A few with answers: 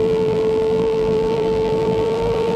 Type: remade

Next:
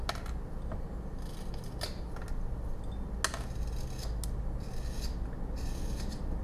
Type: recorded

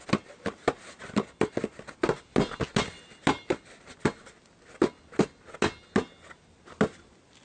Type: recorded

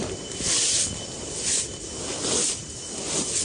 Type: recorded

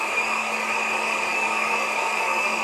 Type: remade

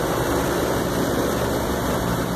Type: recorded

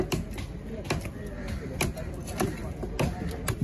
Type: recorded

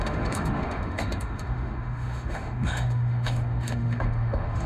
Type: remade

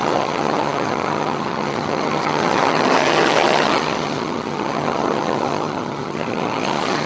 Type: remade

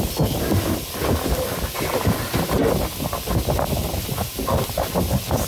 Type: recorded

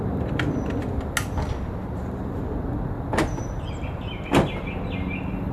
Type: recorded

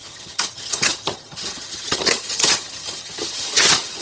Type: remade